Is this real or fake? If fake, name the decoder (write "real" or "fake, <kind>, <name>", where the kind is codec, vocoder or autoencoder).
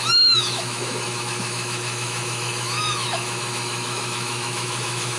fake, autoencoder, DAC-VAE